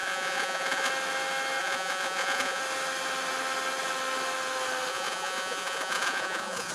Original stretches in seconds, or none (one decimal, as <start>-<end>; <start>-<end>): 0.9-1.6; 2.6-4.9